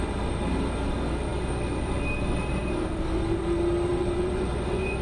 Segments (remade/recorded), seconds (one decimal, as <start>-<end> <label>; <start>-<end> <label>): 0.0-3.9 recorded; 3.9-5.0 remade